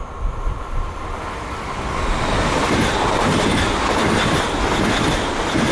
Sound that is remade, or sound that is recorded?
recorded